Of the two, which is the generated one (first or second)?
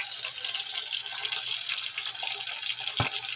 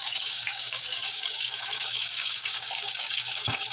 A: second